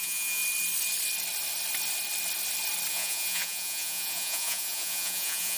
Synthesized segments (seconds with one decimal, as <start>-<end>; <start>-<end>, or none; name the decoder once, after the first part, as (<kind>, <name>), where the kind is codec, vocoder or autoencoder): 0.0-0.4 (vocoder, Vocos); 2.9-5.6